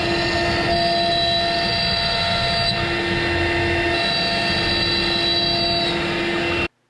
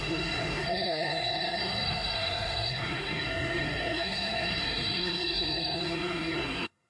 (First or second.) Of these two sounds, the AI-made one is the second